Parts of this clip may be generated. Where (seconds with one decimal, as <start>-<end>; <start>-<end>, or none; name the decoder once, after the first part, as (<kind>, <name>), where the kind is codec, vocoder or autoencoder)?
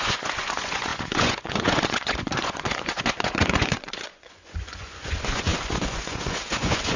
0.0-7.0 (vocoder, Vocos)